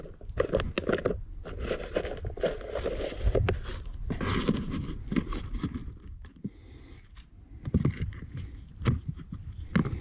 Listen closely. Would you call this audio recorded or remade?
recorded